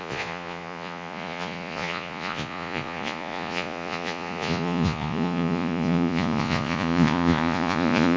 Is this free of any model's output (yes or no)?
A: no